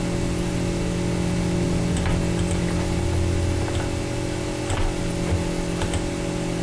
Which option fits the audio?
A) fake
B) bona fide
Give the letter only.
B